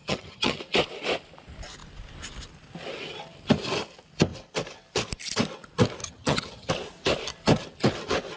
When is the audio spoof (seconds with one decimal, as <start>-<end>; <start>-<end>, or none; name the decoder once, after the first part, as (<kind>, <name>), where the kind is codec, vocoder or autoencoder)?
0.0-0.6 (vocoder, HiFi-GAN); 6.0-6.7